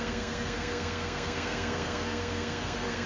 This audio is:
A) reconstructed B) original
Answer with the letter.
A